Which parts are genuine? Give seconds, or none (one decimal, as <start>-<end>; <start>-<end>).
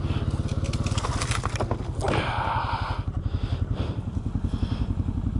0.0-5.4